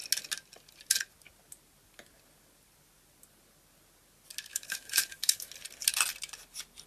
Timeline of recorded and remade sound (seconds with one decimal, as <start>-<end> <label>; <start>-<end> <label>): 0.0-4.5 recorded; 4.5-5.5 remade; 5.5-6.9 recorded